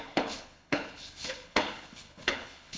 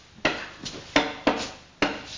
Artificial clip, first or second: first